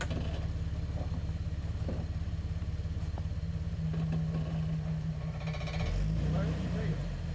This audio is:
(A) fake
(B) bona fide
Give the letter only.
B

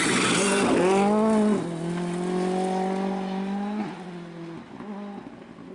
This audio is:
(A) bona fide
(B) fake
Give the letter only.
A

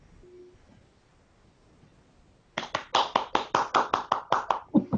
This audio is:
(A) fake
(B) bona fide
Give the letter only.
B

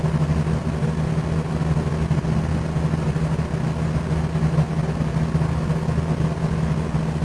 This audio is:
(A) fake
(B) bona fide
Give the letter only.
B